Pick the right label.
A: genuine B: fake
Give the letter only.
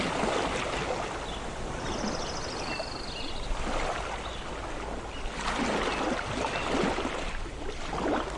A